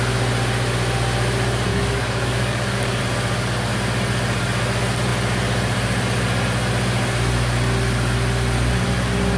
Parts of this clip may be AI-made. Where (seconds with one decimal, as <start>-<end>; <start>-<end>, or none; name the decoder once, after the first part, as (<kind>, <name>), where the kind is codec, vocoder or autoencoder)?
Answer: 1.7-3.0 (codec, DAC)